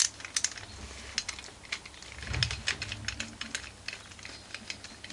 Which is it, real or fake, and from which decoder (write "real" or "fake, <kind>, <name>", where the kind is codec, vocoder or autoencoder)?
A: real